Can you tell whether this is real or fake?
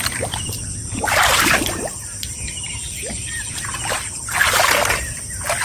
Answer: real